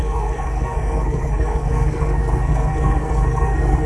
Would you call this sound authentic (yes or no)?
no